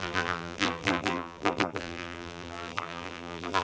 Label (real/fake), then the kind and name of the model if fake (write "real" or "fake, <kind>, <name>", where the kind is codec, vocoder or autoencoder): fake, vocoder, BigVGAN v2